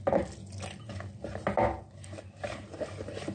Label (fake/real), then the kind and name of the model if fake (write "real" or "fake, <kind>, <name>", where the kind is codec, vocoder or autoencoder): real